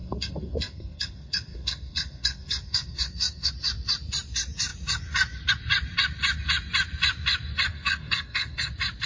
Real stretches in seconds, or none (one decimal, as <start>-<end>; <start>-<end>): 3.5-7.7; 8.7-9.1